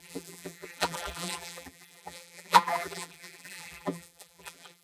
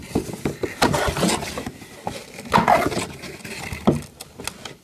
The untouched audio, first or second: second